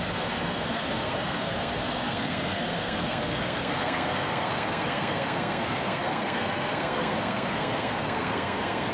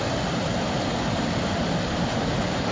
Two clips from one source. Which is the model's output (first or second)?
first